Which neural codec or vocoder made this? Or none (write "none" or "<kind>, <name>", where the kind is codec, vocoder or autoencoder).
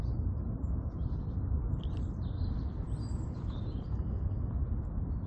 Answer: none